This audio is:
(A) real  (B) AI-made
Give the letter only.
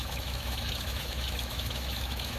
B